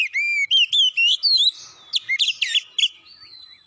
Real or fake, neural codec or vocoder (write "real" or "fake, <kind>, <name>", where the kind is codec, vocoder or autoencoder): real